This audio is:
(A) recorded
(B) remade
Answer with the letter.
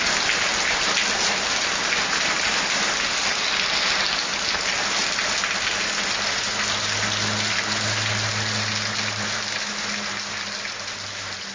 A